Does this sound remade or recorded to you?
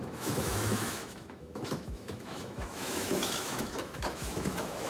remade